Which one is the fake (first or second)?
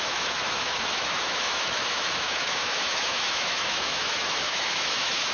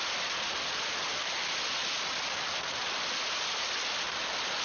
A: first